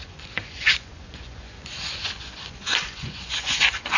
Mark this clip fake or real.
fake